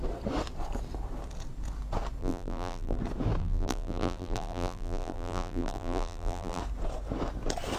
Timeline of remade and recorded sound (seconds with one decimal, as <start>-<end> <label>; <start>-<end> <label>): 0.0-2.2 recorded; 2.2-3.0 remade; 3.0-3.4 recorded; 3.4-6.6 remade; 6.6-7.8 recorded